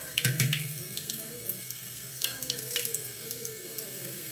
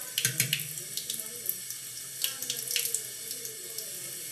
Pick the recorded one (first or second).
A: second